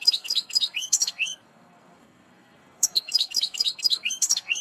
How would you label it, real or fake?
fake